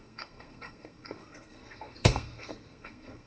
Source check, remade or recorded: remade